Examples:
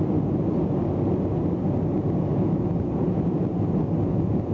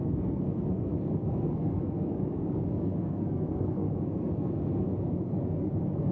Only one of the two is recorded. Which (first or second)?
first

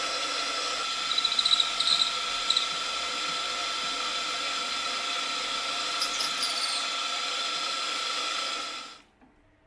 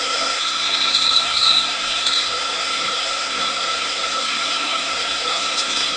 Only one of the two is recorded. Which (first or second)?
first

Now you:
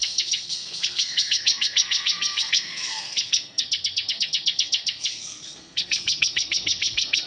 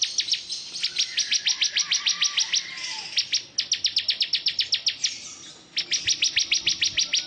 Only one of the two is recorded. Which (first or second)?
second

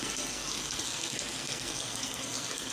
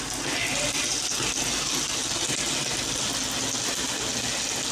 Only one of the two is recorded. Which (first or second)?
second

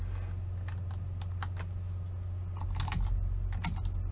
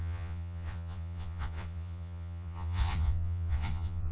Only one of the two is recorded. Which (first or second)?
first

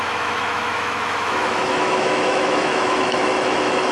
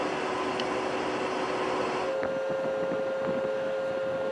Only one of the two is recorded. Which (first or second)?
second